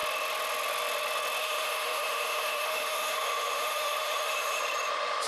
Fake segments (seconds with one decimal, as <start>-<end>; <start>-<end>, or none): 1.4-4.6